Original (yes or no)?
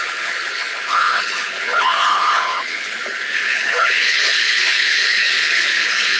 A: no